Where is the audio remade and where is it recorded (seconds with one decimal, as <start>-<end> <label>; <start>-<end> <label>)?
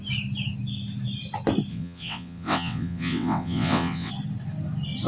0.0-1.7 recorded; 1.7-4.1 remade; 4.1-5.1 recorded